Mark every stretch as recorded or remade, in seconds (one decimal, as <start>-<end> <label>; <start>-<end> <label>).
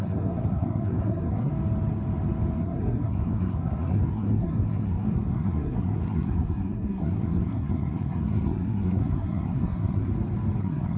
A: 0.0-1.5 remade; 1.5-2.6 recorded; 2.6-10.1 remade; 10.1-10.6 recorded; 10.6-11.0 remade